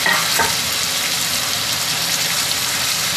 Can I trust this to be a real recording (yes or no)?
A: yes